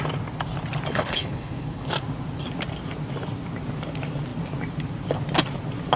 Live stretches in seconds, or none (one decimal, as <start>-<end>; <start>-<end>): 0.0-0.9; 1.9-6.0

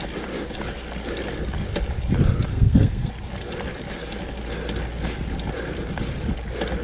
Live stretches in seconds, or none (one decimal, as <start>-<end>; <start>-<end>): 0.0-2.5; 3.1-6.8

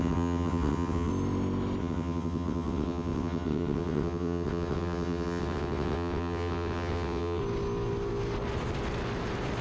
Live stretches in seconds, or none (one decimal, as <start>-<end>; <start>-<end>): 1.1-1.8; 7.4-9.6